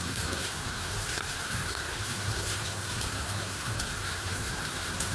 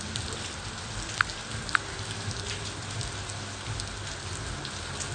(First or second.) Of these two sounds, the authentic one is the second